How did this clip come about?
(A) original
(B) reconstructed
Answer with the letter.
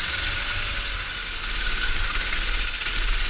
A